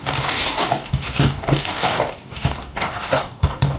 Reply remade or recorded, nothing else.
remade